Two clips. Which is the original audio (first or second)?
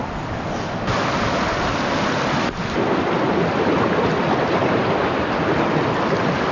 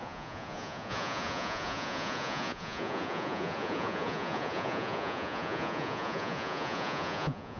first